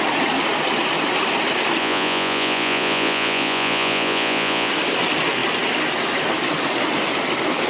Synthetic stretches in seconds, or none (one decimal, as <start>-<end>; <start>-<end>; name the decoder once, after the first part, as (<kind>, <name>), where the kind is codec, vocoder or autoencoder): 1.8-4.7 (vocoder, Vocos)